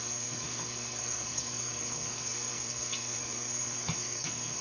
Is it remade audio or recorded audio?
remade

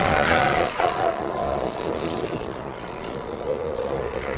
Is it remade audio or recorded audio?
remade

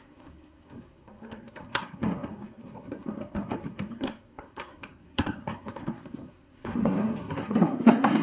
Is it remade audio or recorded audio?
remade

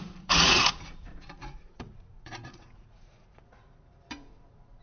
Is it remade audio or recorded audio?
remade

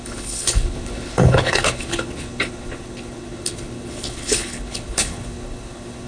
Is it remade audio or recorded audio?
remade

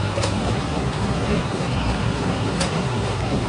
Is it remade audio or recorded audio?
remade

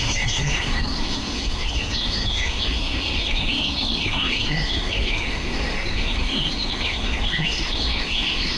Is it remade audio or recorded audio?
remade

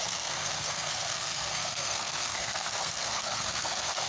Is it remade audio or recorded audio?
remade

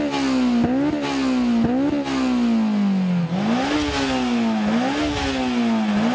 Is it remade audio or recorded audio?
recorded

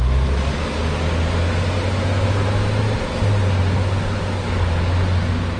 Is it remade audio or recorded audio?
recorded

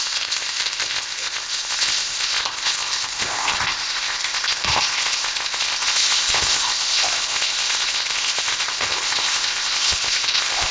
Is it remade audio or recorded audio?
remade